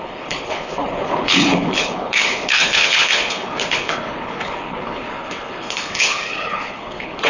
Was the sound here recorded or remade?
remade